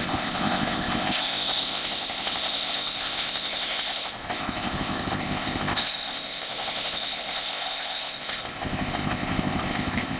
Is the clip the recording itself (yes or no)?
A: no